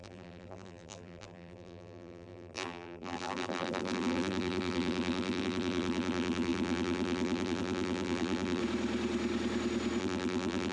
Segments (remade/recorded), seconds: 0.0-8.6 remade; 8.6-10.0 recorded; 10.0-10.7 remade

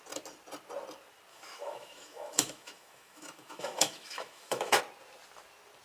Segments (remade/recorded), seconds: 0.0-1.3 recorded; 1.3-4.8 remade; 4.8-5.8 recorded

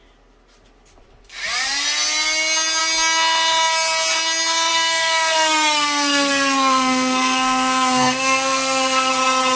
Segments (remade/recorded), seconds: 0.0-4.7 recorded; 4.7-9.1 remade; 9.1-9.6 recorded

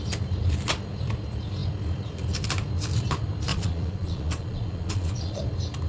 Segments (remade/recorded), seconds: 0.0-3.5 recorded; 3.5-5.4 remade; 5.4-5.9 recorded